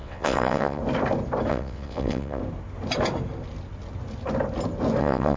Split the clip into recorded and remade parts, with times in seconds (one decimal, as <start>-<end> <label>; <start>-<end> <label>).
0.0-0.8 remade; 0.8-1.5 recorded; 1.5-2.4 remade; 2.4-5.0 recorded; 5.0-5.4 remade